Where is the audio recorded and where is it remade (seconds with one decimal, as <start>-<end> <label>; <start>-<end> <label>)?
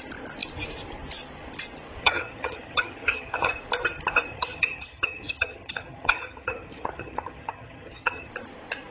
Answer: 0.0-2.0 recorded; 2.0-3.5 remade; 3.5-4.3 recorded; 4.3-8.3 remade; 8.3-8.9 recorded